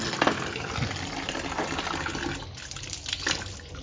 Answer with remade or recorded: recorded